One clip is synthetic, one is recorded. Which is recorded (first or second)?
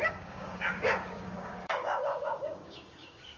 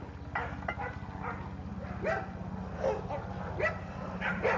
second